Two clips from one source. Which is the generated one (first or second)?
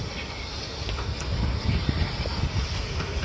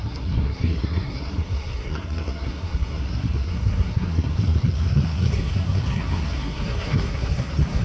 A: second